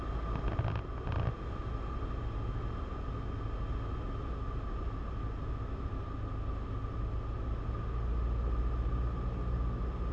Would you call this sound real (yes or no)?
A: yes